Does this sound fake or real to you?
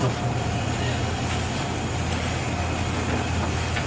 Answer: real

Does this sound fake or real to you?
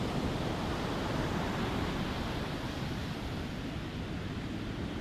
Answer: fake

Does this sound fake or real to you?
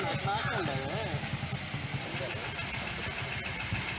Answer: real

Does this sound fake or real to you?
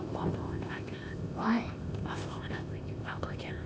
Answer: fake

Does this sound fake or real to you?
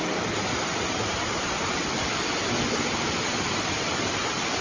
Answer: real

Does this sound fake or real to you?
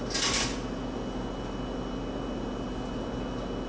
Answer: real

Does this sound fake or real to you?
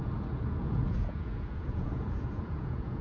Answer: fake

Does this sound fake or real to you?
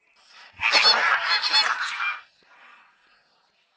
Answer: real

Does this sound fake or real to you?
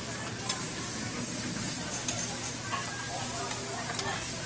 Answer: real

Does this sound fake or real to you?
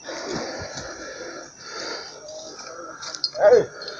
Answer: real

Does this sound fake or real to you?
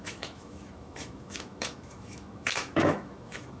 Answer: fake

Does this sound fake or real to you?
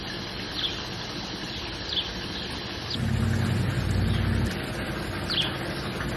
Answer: real